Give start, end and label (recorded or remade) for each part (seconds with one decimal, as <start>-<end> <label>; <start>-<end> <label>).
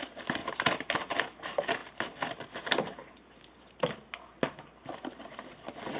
0.0-0.4 recorded; 0.4-0.9 remade; 0.9-3.0 recorded; 3.0-4.0 remade; 4.0-6.0 recorded